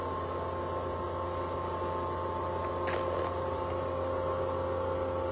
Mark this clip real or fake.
real